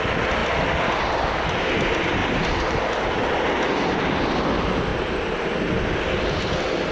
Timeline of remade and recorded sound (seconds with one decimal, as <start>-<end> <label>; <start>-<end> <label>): 0.0-2.2 recorded; 2.2-2.8 remade; 2.8-4.9 recorded; 4.9-5.7 remade; 5.7-6.9 recorded